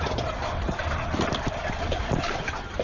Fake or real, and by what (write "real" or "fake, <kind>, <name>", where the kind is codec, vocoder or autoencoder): real